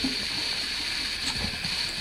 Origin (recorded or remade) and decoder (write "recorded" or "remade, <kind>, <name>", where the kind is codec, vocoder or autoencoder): recorded